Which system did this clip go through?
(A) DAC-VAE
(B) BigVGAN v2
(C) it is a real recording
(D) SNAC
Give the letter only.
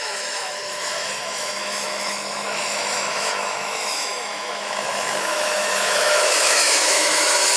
A